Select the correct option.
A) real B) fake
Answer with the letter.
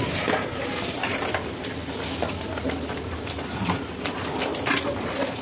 A